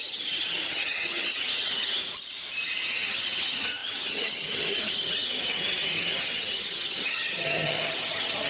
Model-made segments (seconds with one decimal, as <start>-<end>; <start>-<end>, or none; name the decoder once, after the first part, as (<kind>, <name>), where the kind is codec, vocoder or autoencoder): 0.0-2.0 (vocoder, HiFi-GAN); 2.9-8.5